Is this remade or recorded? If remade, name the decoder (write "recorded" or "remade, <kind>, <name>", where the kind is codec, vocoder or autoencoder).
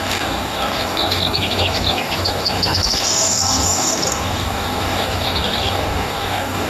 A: remade, codec, DAC